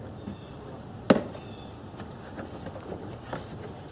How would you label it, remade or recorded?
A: recorded